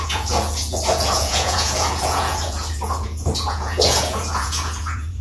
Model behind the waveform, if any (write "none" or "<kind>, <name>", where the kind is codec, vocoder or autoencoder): vocoder, Vocos